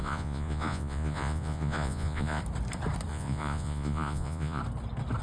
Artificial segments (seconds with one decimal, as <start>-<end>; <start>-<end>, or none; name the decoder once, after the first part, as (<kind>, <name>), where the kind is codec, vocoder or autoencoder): 0.0-2.4 (vocoder, Vocos); 3.1-4.6